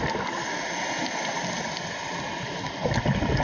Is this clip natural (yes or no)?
yes